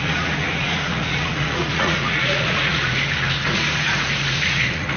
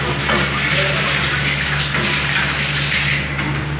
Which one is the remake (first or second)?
first